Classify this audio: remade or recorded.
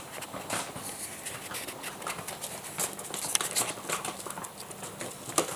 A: recorded